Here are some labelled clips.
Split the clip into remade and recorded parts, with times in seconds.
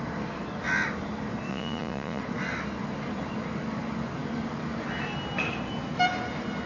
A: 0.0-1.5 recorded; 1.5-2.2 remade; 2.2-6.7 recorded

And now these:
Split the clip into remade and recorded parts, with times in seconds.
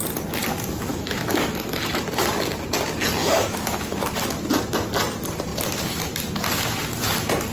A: 0.0-0.9 recorded; 0.9-1.9 remade; 1.9-3.2 recorded; 3.2-4.1 remade; 4.1-7.5 recorded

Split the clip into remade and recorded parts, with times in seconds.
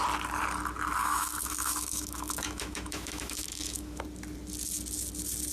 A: 0.0-1.0 recorded; 1.0-4.0 remade; 4.0-5.5 recorded